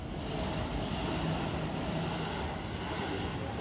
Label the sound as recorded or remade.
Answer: recorded